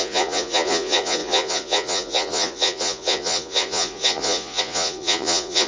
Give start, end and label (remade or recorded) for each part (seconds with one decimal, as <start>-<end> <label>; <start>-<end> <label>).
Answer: 0.0-5.7 remade